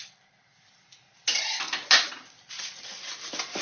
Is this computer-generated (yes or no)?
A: no